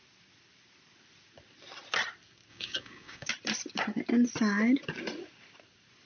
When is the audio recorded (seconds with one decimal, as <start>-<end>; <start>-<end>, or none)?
0.0-2.5; 3.3-6.1